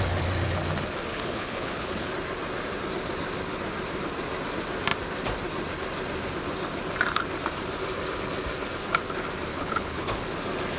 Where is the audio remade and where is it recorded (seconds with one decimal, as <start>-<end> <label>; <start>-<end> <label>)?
0.0-1.1 recorded; 1.1-2.1 remade; 2.1-9.5 recorded; 9.5-10.2 remade; 10.2-10.8 recorded